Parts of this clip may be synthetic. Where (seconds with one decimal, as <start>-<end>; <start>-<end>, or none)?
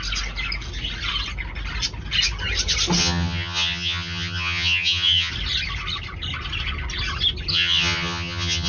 3.0-5.3; 7.5-8.7